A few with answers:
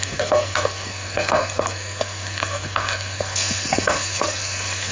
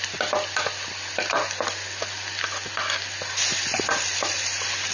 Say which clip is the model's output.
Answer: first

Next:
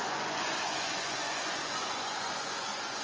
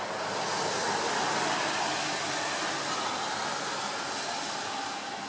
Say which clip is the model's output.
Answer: first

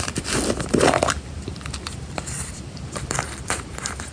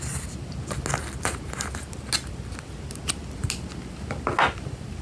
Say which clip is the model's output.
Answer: first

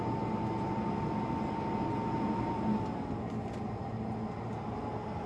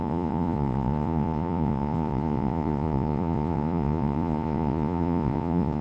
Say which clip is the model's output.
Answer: second